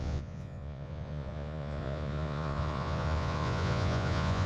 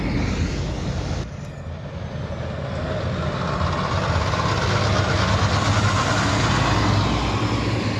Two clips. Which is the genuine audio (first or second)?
second